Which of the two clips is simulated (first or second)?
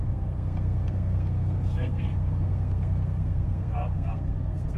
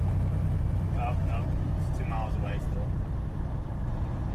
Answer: first